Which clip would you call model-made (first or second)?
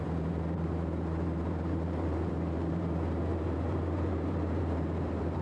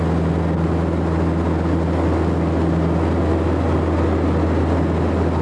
first